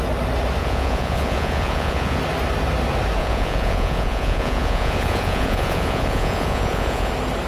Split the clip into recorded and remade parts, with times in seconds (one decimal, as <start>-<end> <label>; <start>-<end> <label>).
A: 0.0-0.6 recorded; 0.6-2.2 remade; 2.2-3.2 recorded; 3.2-7.1 remade; 7.1-7.5 recorded